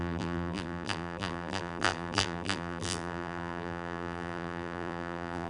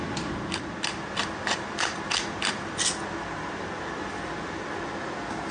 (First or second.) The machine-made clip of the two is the first